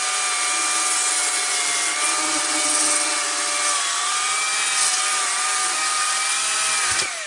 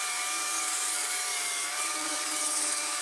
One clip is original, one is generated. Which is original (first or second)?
first